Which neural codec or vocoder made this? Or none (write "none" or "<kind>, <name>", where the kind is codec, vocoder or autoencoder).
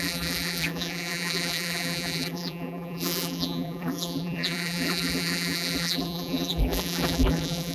vocoder, BigVGAN v2